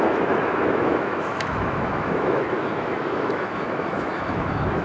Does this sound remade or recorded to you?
remade